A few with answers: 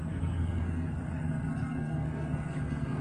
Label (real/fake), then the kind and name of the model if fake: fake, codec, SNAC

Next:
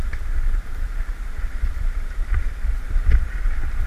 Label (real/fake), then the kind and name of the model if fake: fake, vocoder, BigVGAN v2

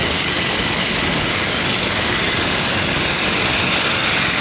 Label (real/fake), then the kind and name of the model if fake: fake, codec, DAC